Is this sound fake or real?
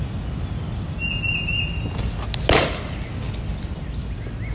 real